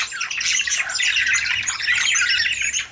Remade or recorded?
recorded